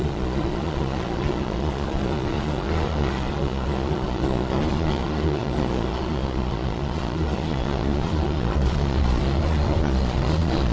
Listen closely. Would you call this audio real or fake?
fake